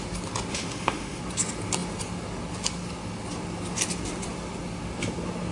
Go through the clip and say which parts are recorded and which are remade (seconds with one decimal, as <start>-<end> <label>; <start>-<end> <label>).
0.0-0.5 recorded; 0.5-1.2 remade; 1.2-5.5 recorded